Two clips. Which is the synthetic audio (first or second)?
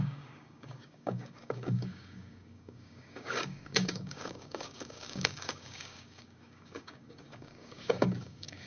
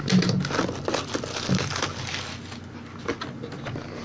first